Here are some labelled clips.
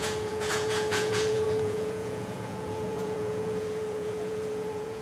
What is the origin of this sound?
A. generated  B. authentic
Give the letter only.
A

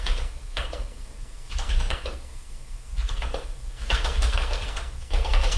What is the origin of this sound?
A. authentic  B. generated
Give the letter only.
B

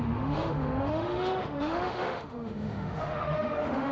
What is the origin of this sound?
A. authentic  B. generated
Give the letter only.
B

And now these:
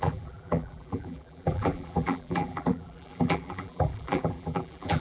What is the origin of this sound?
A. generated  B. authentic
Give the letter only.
A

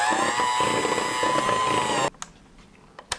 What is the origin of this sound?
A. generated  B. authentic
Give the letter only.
B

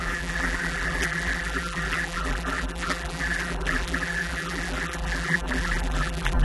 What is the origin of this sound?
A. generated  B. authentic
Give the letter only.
A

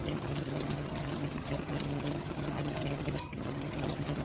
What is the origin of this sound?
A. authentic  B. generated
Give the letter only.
B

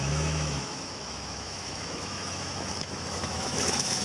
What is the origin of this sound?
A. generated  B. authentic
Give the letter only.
A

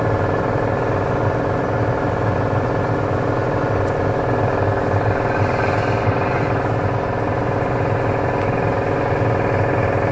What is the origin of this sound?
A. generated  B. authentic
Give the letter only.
B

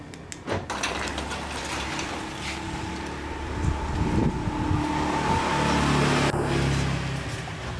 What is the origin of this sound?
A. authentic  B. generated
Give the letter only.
A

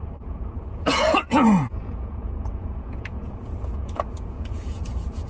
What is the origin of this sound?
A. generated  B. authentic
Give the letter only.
A